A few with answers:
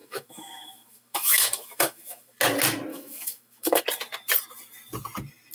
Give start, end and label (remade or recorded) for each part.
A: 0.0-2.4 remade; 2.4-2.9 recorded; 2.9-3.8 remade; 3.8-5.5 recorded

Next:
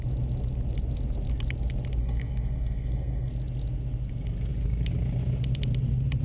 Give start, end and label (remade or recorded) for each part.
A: 0.0-2.0 recorded; 2.0-3.3 remade; 3.3-6.2 recorded

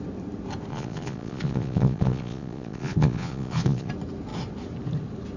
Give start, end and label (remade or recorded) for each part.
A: 0.0-0.7 recorded; 0.7-3.9 remade; 3.9-5.4 recorded

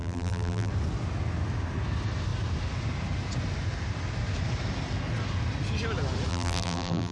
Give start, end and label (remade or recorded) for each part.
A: 0.0-0.7 remade; 0.7-6.3 recorded; 6.3-7.1 remade

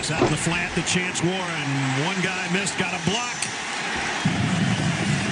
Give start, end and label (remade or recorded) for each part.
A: 0.0-0.6 remade; 0.6-1.4 recorded; 1.4-3.0 remade; 3.0-4.2 recorded; 4.2-5.3 remade